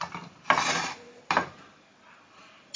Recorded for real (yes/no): yes